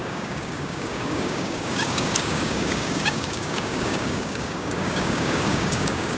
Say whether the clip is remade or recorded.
remade